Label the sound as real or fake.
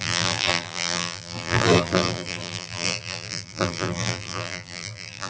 fake